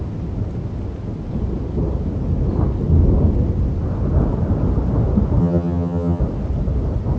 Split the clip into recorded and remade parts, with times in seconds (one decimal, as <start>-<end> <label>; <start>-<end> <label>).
0.0-5.4 recorded; 5.4-6.2 remade; 6.2-7.2 recorded